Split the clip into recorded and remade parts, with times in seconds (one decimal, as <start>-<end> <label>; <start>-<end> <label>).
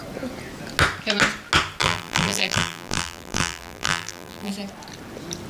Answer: 0.0-1.8 recorded; 1.8-4.5 remade; 4.5-5.5 recorded